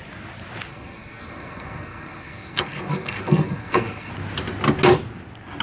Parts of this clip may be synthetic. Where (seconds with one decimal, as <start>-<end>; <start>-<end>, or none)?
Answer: 0.7-4.1